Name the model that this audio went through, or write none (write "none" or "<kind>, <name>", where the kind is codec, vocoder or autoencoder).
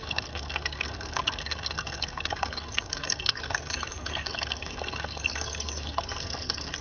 codec, SNAC